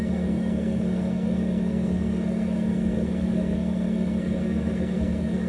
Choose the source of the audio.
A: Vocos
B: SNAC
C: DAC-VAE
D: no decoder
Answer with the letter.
B